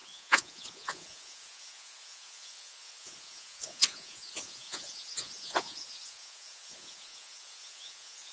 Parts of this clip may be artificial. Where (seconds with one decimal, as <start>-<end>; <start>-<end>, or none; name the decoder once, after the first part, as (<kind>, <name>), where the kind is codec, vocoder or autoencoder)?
0.0-8.3 (vocoder, Vocos)